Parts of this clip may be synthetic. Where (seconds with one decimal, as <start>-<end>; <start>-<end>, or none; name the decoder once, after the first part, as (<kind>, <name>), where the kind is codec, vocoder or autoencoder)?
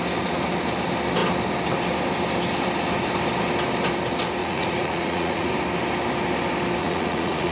4.4-5.5 (vocoder, Vocos); 6.8-7.5